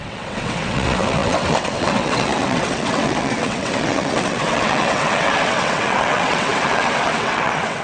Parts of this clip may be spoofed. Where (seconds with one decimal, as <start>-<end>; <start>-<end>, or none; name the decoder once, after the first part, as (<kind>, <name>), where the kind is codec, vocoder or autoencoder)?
0.0-7.8 (vocoder, WaveNeXt)